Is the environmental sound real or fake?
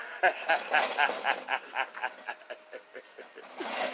real